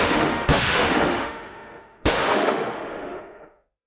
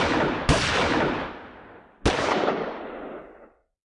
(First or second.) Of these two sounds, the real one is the second